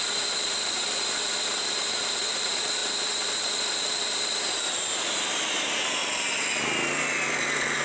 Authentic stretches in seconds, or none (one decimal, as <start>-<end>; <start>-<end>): 6.0-7.8